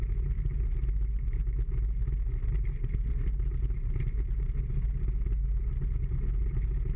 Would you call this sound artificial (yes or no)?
no